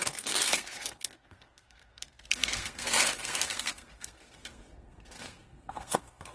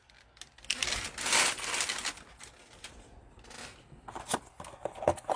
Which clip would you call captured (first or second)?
second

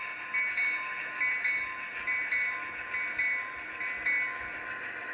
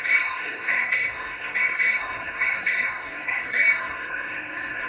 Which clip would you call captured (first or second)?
first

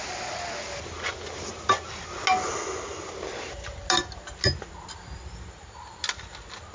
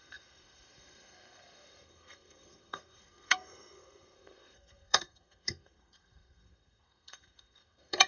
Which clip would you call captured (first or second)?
first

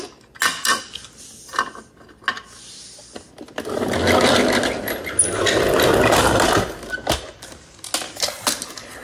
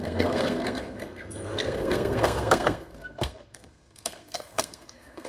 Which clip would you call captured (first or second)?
first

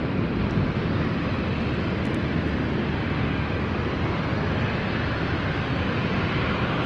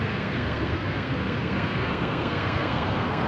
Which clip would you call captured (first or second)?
first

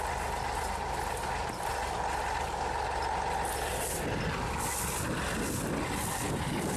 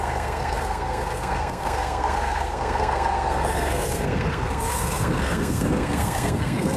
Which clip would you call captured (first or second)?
first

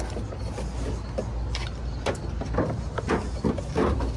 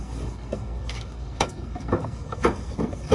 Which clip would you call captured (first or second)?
first